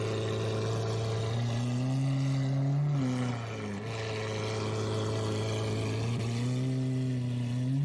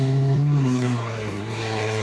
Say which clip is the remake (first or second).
second